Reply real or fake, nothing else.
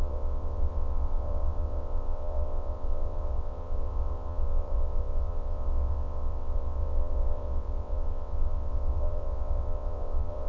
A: fake